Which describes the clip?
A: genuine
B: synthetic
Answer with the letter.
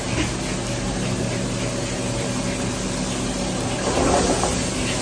A